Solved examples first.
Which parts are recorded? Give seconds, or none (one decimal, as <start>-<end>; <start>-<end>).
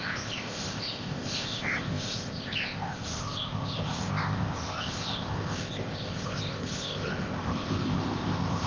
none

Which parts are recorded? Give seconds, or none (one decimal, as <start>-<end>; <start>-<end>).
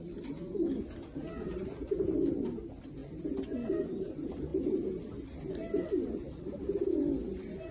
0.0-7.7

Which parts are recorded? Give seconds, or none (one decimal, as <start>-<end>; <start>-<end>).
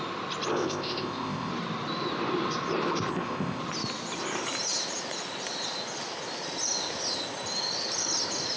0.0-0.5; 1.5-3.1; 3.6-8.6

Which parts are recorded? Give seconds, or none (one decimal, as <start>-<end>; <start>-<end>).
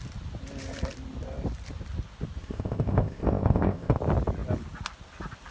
0.0-2.4; 4.0-5.5